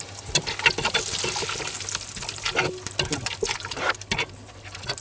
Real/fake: real